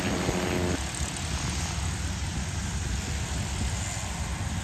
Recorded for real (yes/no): yes